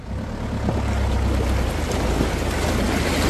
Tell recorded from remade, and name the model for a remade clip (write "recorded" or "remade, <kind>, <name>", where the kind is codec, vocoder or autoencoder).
recorded